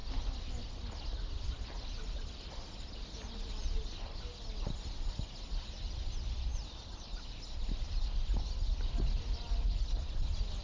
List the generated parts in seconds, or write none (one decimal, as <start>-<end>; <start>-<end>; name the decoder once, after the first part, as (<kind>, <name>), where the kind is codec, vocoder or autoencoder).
none